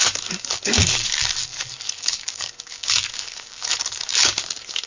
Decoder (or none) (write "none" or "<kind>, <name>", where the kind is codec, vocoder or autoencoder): codec, DAC